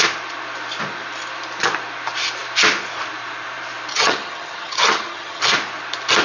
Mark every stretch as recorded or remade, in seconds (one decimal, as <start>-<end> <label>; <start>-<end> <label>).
0.0-3.9 recorded; 3.9-5.4 remade; 5.4-6.2 recorded